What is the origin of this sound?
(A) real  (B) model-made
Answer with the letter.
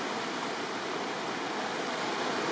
A